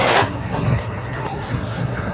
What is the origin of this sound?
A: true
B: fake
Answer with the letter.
B